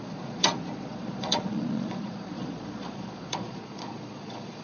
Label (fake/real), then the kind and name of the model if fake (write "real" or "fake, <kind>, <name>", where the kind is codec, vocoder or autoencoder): fake, vocoder, Vocos